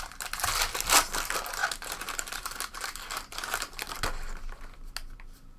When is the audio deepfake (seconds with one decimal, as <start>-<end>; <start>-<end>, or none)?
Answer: none